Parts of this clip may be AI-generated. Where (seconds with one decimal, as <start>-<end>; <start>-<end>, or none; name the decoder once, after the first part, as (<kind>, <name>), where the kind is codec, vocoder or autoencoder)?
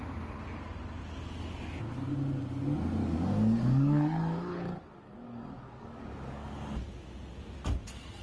3.0-6.4 (codec, DAC)